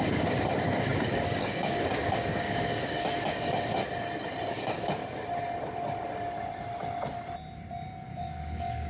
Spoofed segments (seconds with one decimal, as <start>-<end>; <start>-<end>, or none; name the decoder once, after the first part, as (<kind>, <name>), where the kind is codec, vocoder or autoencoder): 0.0-3.8 (codec, DAC); 4.5-5.0; 8.2-8.9